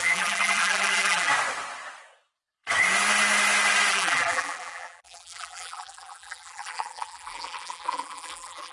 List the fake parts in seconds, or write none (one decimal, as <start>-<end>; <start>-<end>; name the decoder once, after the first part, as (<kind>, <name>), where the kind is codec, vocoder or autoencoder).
0.0-1.3 (vocoder, BigVGAN v2); 3.9-8.7